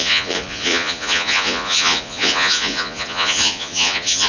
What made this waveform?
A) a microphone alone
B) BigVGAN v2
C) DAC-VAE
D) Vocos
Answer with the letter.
D